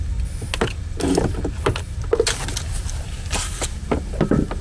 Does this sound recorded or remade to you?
recorded